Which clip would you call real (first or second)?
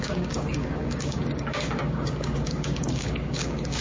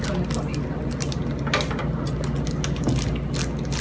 second